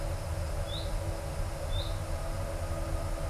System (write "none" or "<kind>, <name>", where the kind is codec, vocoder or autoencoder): none